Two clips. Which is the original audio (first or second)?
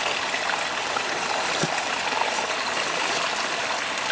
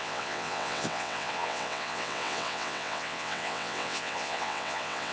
first